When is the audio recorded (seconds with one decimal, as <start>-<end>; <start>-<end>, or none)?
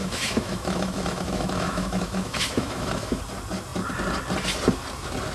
3.2-5.3